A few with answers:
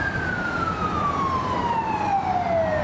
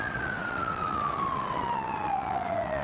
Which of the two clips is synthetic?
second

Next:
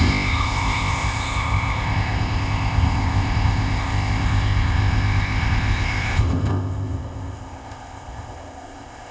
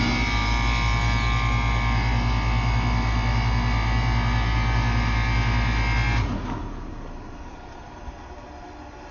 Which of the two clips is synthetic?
first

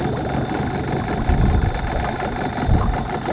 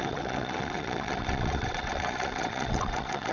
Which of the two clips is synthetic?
second